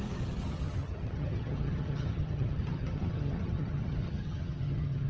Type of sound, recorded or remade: remade